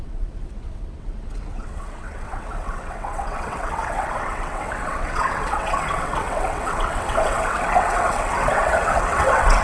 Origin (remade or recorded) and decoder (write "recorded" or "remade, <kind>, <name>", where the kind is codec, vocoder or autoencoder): remade, vocoder, WaveNeXt